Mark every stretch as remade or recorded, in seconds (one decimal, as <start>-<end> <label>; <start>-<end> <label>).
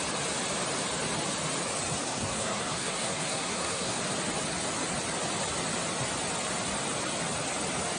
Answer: 0.0-2.0 recorded; 2.0-4.0 remade; 4.0-8.0 recorded